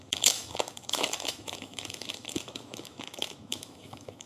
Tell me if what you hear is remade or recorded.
remade